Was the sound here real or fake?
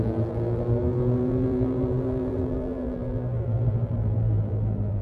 fake